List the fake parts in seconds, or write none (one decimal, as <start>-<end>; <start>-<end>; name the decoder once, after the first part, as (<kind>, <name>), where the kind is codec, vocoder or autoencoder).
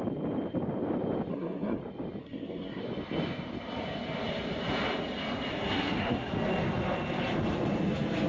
1.3-1.8 (codec, SNAC); 2.2-2.8; 5.5-6.3